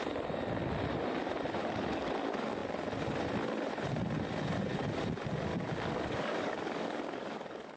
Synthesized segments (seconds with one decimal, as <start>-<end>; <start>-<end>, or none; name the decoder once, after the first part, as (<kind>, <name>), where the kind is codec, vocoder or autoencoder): 1.6-2.1 (codec, DAC); 5.5-7.8

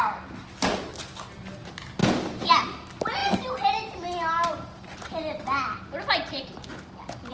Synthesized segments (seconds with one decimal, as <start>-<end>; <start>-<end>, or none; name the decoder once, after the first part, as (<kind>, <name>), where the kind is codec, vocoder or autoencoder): none

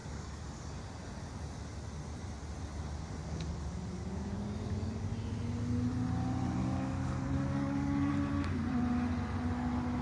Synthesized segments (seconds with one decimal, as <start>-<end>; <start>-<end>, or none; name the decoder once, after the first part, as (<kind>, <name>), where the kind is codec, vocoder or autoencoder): 0.0-0.7 (codec, DAC); 3.2-5.0; 6.6-8.1

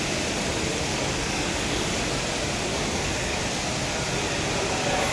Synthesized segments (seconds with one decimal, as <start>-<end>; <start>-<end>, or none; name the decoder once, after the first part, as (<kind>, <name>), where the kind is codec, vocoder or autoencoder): 0.9-2.0 (codec, DAC); 2.7-3.4

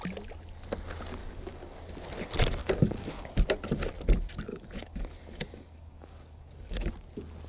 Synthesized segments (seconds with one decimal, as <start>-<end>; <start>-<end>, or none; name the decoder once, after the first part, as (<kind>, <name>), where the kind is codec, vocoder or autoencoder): 1.2-1.8 (codec, DAC); 2.6-3.1; 4.5-6.9

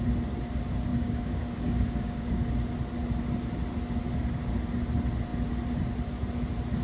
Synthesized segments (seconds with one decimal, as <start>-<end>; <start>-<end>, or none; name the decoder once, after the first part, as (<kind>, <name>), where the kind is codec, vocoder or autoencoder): 0.9-2.5 (codec, DAC)

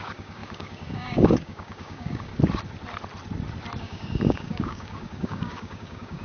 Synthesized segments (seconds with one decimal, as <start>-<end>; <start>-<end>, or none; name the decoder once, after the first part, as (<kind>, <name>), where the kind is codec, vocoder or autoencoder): 0.0-2.3 (codec, DAC); 3.8-6.2